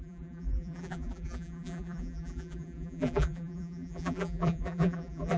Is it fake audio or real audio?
fake